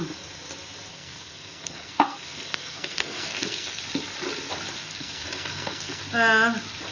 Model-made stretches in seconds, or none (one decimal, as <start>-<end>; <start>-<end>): 0.9-3.8; 4.8-6.0